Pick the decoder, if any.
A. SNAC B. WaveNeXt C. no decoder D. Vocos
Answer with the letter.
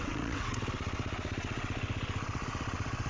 B